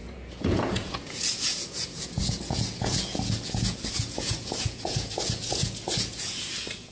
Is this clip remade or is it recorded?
remade